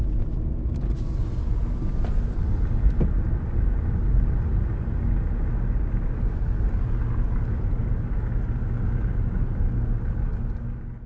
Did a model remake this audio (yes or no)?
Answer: no